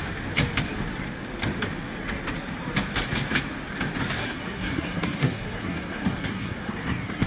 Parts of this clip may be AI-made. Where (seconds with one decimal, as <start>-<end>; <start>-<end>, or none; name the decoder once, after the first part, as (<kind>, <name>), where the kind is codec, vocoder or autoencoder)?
4.2-7.3 (codec, SNAC)